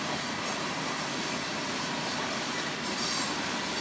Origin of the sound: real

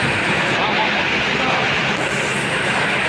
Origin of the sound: real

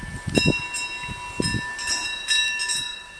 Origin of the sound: real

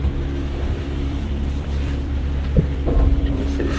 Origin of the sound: fake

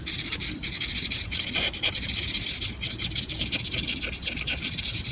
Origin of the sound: fake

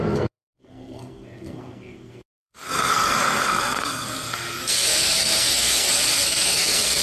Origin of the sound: fake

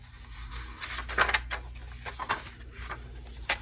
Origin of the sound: real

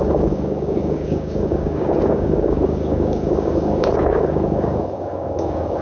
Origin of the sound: fake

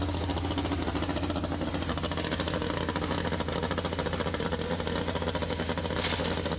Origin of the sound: real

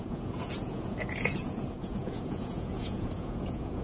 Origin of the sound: fake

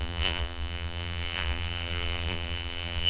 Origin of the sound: fake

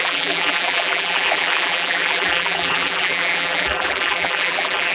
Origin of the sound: fake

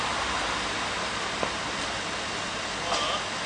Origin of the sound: real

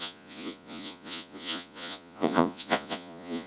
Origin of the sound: fake